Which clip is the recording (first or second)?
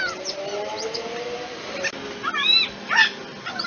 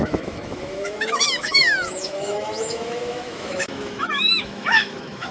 first